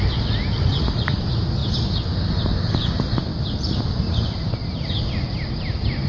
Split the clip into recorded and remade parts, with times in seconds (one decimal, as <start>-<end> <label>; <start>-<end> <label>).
0.0-3.3 recorded; 3.3-4.5 remade; 4.5-6.1 recorded